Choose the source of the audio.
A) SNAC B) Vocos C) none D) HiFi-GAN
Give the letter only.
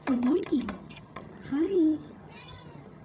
D